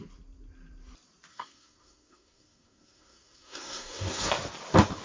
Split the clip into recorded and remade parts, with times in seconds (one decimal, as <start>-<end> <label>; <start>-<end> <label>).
0.0-1.3 recorded; 1.3-4.3 remade; 4.3-5.0 recorded